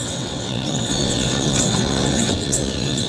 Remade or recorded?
remade